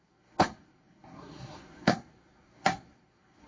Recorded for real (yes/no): no